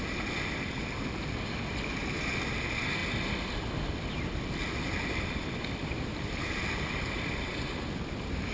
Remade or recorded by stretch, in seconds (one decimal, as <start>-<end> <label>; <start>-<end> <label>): 0.0-8.5 recorded